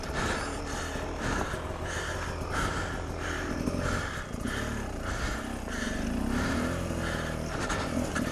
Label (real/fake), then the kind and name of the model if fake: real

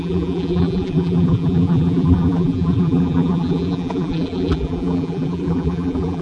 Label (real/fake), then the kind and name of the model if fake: fake, vocoder, BigVGAN v2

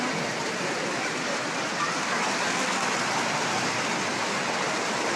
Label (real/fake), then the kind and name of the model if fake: real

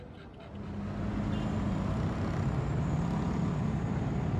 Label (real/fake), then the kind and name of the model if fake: real